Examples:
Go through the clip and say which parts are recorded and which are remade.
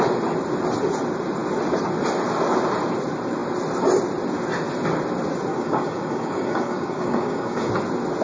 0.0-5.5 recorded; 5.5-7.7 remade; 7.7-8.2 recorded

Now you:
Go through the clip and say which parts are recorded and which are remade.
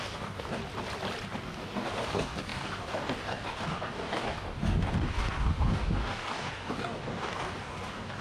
0.0-0.6 remade; 0.6-1.4 recorded; 1.4-8.2 remade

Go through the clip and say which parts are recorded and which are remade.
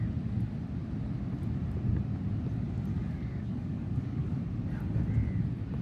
0.0-2.9 recorded; 2.9-4.4 remade; 4.4-5.8 recorded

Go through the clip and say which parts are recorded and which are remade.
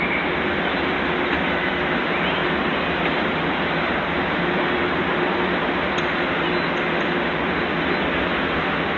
0.0-9.0 recorded